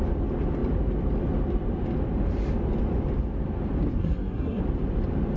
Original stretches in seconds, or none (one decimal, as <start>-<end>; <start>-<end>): 0.0-4.0; 4.6-5.4